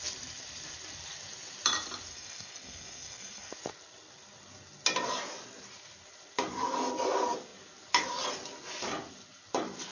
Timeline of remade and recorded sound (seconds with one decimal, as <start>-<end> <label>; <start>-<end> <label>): 0.0-2.1 recorded; 2.1-3.5 remade; 3.5-9.9 recorded